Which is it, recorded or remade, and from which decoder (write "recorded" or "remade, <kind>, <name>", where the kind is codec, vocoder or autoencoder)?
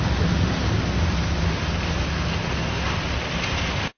recorded